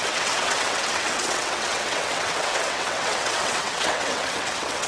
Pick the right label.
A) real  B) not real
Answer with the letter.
B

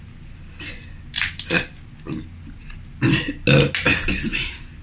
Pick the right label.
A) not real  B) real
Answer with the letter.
B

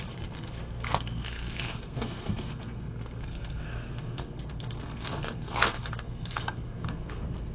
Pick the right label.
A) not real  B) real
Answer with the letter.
A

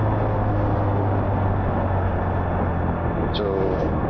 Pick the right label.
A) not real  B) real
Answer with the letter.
B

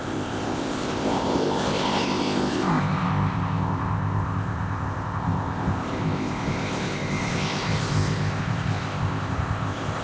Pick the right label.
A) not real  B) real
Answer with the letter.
A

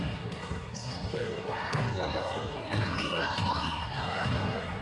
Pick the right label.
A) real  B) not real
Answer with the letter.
B